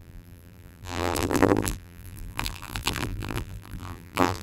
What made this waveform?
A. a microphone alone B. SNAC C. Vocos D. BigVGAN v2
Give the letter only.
D